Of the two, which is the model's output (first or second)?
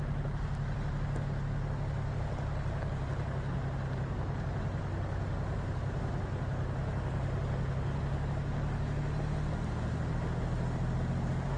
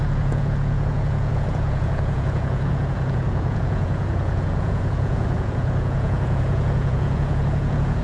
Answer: second